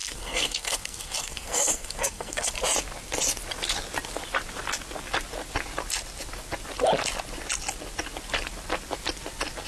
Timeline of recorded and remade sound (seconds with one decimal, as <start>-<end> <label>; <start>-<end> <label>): 0.0-2.5 remade; 2.5-9.7 recorded